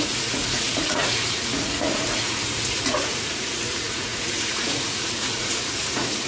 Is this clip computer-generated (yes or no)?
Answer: yes